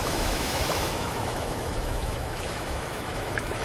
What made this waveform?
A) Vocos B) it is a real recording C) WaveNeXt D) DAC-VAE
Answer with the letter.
D